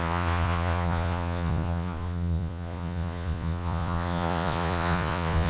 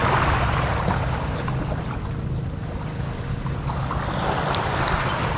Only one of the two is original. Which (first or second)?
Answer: second